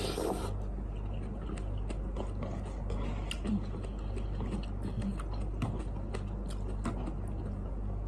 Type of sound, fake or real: real